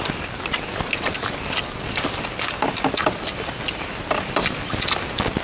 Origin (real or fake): real